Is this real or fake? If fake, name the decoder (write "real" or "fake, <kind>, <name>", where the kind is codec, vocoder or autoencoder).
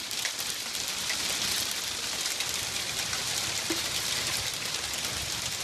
real